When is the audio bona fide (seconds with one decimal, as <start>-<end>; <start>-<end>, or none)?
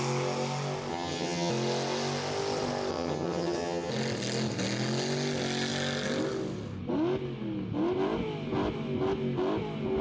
0.0-0.9; 1.5-2.9; 3.9-10.0